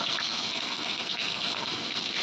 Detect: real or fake fake